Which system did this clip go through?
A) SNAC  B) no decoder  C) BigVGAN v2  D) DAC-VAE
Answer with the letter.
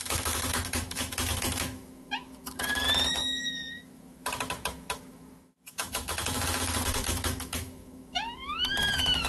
D